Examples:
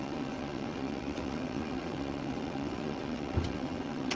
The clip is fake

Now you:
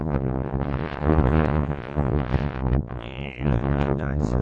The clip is fake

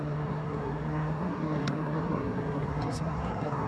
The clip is fake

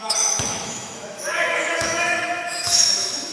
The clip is fake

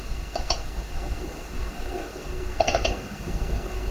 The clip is fake